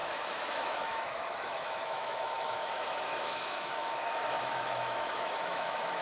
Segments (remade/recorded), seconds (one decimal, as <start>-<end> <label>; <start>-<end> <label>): 0.0-6.0 remade